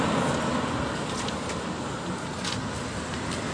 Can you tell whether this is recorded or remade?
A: recorded